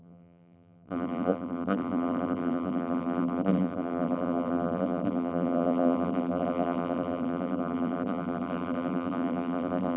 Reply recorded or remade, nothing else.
remade